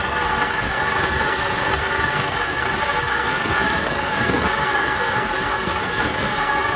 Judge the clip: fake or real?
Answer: fake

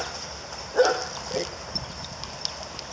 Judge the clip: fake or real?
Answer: real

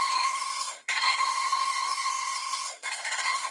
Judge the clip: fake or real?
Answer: fake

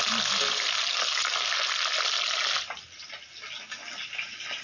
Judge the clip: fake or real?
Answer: real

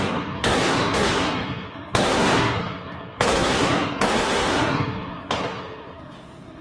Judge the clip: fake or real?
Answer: fake